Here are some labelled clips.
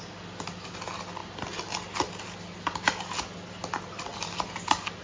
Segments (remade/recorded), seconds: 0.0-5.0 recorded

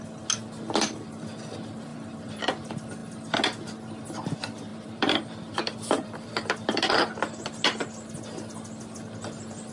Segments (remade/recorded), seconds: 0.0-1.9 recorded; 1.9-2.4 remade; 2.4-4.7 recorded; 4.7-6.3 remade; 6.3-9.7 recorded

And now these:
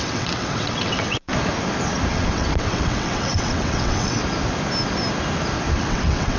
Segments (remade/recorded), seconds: 0.0-1.3 remade; 1.3-2.1 recorded; 2.1-4.2 remade; 4.2-5.8 recorded; 5.8-6.4 remade

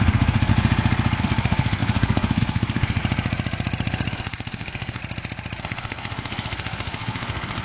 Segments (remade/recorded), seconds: 0.0-0.5 remade; 0.5-1.2 recorded; 1.2-3.0 remade; 3.0-4.1 recorded; 4.1-5.0 remade; 5.0-5.6 recorded; 5.6-7.6 remade

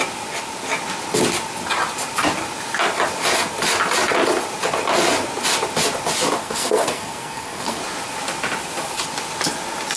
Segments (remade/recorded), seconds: 0.0-6.4 recorded; 6.4-7.8 remade; 7.8-10.0 recorded

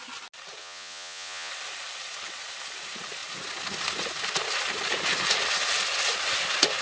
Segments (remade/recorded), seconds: 0.0-0.6 recorded; 0.6-1.5 remade; 1.5-6.8 recorded

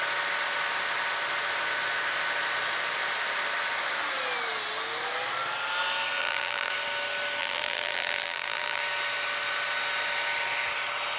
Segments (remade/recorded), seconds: 0.0-6.2 recorded; 6.2-6.7 remade; 6.7-7.4 recorded; 7.4-8.8 remade; 8.8-11.2 recorded

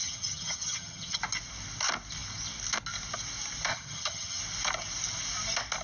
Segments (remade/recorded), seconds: 0.0-1.2 remade; 1.2-3.7 recorded; 3.7-4.4 remade; 4.4-5.8 recorded